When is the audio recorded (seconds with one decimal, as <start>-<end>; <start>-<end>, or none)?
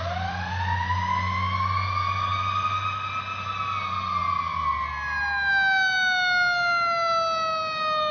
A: 0.0-8.1